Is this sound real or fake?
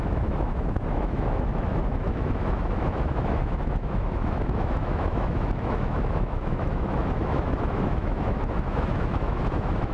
fake